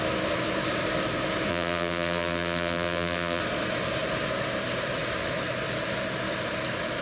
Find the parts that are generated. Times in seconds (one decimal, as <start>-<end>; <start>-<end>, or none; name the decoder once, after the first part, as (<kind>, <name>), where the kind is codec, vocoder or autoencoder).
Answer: 1.5-3.4 (vocoder, BigVGAN v2)